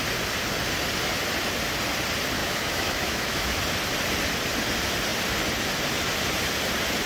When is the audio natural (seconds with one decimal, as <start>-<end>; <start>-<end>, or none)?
0.0-2.4; 3.6-7.1